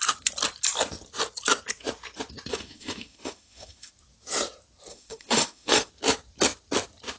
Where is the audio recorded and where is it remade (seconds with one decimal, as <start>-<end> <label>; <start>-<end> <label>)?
0.0-2.5 recorded; 2.5-3.9 remade; 3.9-4.9 recorded; 4.9-5.9 remade; 5.9-7.2 recorded